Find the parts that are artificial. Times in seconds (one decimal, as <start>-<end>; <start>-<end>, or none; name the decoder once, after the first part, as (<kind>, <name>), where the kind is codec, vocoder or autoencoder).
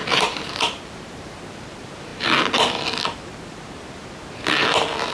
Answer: 0.0-1.6 (vocoder, BigVGAN v2)